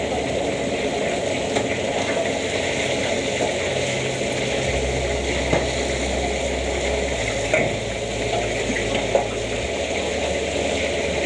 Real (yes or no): yes